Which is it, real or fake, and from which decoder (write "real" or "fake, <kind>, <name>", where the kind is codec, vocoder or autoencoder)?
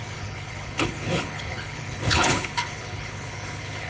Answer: fake, codec, HILCodec